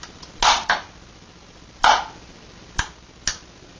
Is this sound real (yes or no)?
yes